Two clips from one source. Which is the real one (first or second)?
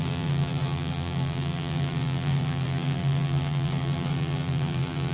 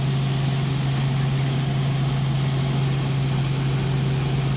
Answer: second